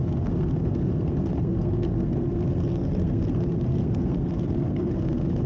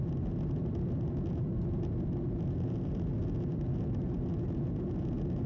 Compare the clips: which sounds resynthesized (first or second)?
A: first